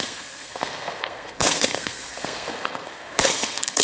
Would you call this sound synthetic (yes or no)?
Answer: yes